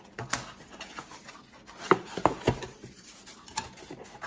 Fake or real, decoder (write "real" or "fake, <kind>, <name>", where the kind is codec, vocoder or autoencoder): real